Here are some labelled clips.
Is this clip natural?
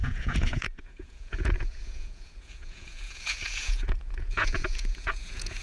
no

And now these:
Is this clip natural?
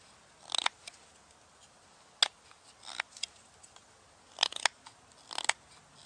yes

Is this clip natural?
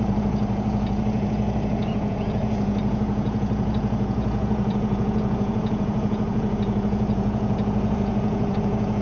no